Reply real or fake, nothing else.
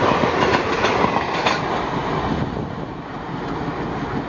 real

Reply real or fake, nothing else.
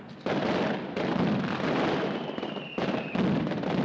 real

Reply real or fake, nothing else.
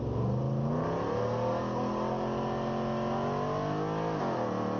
real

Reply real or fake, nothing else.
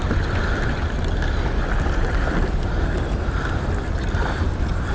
real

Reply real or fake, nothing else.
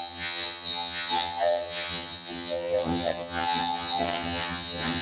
fake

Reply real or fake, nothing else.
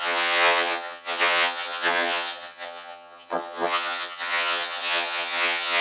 fake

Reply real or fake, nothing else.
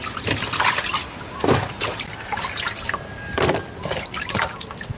real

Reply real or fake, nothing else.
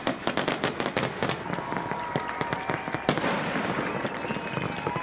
real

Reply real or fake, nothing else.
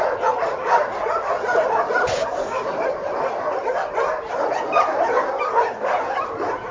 real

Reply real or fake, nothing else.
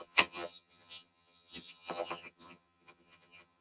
fake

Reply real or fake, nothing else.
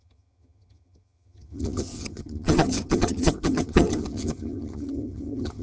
fake